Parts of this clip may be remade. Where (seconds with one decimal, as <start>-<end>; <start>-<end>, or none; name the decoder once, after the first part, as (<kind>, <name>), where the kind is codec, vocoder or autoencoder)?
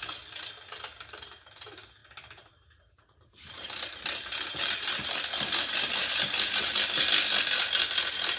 2.0-7.0 (vocoder, BigVGAN v2)